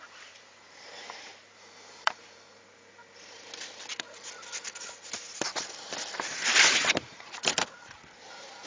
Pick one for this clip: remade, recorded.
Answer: remade